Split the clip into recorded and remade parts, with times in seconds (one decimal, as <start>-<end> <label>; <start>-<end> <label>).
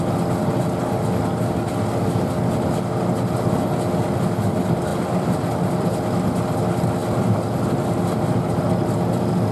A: 0.0-4.9 recorded; 4.9-5.5 remade; 5.5-7.0 recorded; 7.0-8.6 remade; 8.6-9.5 recorded